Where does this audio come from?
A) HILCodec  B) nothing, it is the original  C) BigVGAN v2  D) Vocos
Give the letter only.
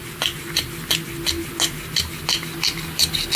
B